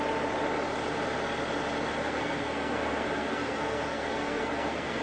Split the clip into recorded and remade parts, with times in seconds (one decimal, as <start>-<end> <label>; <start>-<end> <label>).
0.0-2.0 recorded; 2.0-5.0 remade